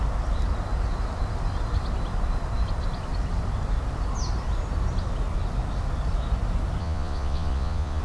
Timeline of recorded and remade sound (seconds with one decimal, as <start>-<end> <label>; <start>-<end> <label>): 0.0-6.8 recorded; 6.8-8.0 remade